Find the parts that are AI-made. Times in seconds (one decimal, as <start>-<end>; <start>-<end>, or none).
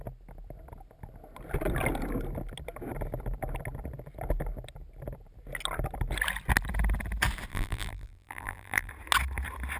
7.5-8.9